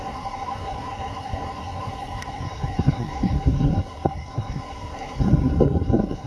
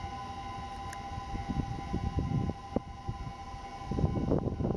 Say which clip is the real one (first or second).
second